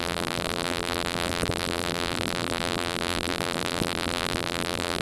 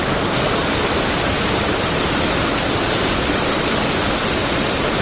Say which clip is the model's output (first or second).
first